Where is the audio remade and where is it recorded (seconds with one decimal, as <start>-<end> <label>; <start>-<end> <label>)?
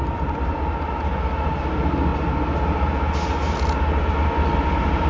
0.0-5.1 recorded